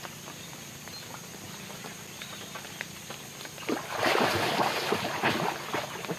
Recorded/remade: recorded